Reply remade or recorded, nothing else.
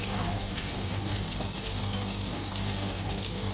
remade